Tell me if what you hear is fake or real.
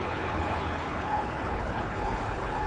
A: fake